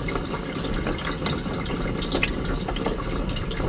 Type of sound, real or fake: real